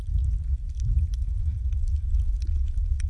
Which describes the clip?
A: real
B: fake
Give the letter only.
A